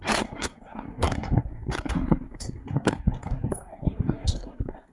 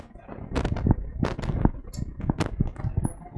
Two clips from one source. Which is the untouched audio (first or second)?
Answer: second